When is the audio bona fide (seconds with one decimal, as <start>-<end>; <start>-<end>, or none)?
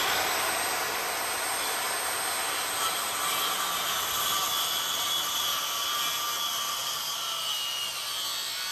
0.0-8.7